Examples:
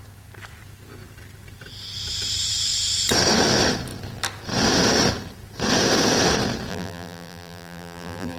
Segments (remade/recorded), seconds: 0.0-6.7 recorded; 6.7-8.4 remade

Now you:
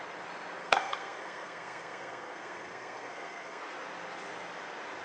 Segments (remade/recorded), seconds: 0.0-0.6 recorded; 0.6-3.6 remade; 3.6-5.0 recorded

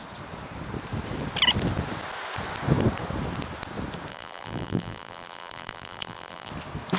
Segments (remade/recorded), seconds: 0.0-4.1 recorded; 4.1-6.5 remade; 6.5-7.0 recorded